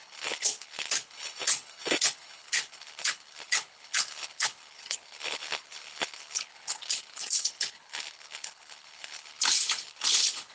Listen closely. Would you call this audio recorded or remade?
remade